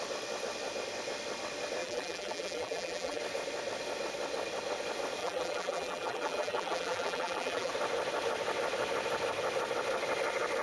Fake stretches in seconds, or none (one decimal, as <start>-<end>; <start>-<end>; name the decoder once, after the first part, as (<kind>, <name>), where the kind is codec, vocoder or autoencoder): 1.8-3.2 (vocoder, BigVGAN v2); 5.2-7.7